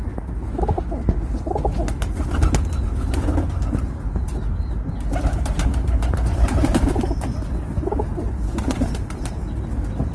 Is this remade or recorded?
recorded